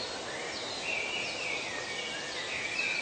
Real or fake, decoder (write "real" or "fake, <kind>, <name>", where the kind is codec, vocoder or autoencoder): real